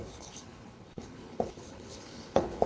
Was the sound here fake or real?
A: fake